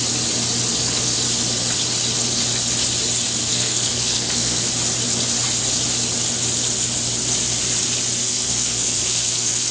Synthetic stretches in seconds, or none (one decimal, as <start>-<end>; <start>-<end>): 3.4-4.7; 8.2-9.7